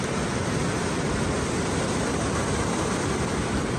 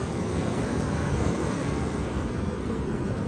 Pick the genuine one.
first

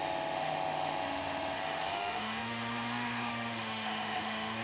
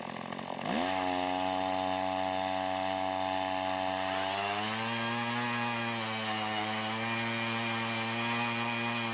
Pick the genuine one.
second